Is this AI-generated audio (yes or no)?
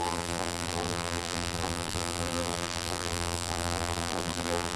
yes